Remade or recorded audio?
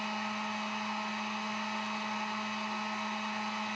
recorded